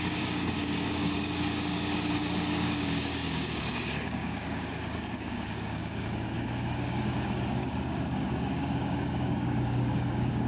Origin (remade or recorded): remade